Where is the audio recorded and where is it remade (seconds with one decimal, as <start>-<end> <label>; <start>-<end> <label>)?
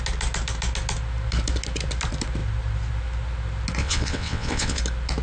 0.0-3.8 recorded; 3.8-4.8 remade; 4.8-5.2 recorded